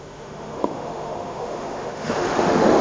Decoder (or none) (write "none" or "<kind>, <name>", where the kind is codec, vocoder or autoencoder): autoencoder, DAC-VAE